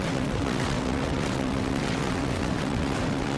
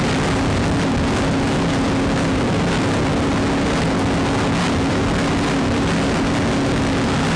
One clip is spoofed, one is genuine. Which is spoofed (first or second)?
first